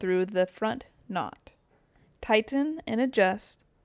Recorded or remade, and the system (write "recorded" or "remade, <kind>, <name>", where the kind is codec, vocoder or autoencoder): recorded